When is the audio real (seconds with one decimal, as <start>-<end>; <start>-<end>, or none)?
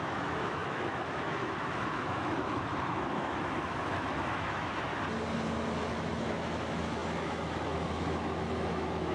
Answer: 4.9-5.9